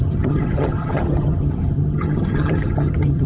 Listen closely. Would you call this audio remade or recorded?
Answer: remade